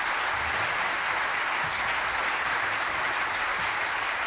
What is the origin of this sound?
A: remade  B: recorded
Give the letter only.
B